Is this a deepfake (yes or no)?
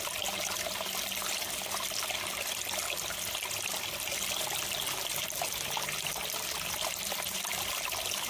no